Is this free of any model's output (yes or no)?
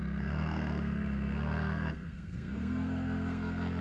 no